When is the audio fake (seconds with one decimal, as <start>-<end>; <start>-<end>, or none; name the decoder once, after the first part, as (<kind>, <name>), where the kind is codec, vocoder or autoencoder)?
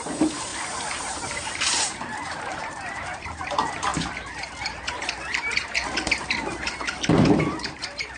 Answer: 0.0-3.9 (vocoder, BigVGAN v2); 4.9-8.2